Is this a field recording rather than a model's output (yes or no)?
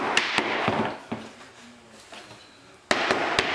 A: yes